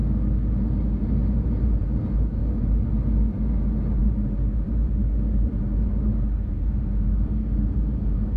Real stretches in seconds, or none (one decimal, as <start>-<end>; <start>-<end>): 0.0-1.2; 1.8-2.4; 2.9-4.0